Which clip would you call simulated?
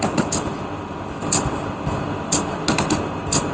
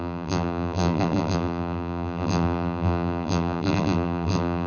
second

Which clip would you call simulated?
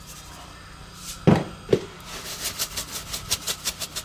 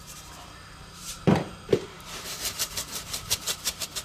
second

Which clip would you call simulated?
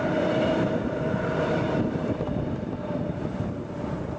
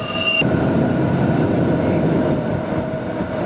first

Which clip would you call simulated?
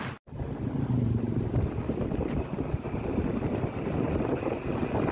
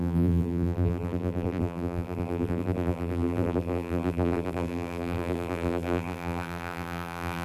second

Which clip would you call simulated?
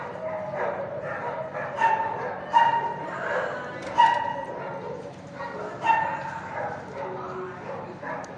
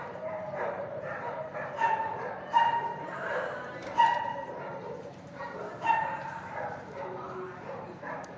second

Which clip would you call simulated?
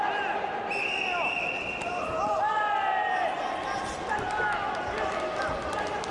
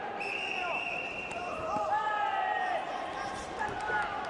second